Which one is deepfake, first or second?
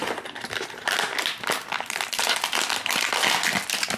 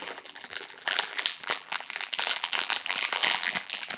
second